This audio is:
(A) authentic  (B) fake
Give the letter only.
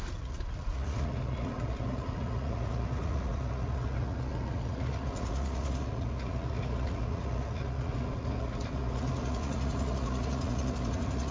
B